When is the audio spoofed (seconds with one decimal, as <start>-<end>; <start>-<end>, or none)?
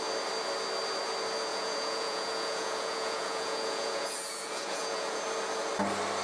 1.5-5.2